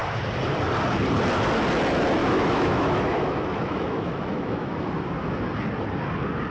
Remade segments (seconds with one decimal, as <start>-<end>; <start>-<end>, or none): 2.2-4.9